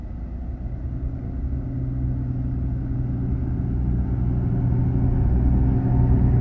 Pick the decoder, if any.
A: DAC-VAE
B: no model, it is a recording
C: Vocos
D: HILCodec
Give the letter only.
B